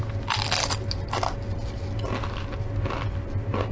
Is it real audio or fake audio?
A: real